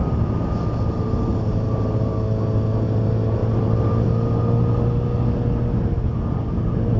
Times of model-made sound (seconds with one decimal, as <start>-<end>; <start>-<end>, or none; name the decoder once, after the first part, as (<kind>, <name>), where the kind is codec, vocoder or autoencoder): 1.3-2.3 (vocoder, BigVGAN v2)